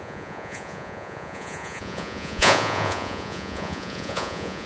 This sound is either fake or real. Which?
fake